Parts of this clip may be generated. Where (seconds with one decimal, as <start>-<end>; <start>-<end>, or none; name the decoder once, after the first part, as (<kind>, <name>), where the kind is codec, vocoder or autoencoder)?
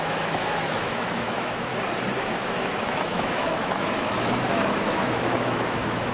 0.0-1.7 (autoencoder, DAC-VAE); 2.2-6.1